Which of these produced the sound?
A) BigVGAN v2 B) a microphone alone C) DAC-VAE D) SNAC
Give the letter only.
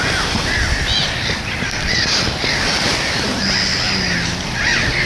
B